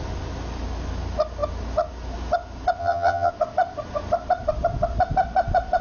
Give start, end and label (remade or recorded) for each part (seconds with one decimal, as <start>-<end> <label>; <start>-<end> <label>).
0.0-2.8 recorded; 2.8-3.3 remade; 3.3-5.8 recorded